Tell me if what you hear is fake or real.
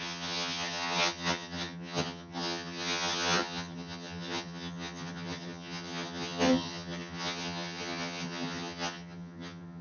fake